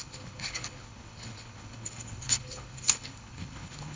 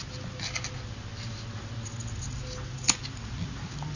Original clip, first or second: second